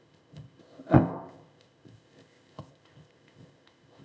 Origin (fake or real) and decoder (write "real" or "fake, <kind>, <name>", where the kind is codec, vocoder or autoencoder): fake, codec, ZipCodec